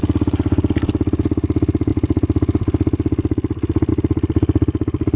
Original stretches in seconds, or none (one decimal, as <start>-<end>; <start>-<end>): 0.0-5.2